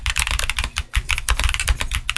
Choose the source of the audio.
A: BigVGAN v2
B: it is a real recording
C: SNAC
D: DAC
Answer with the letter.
B